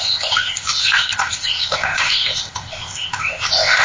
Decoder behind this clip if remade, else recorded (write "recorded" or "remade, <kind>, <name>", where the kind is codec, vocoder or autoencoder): remade, codec, ZipCodec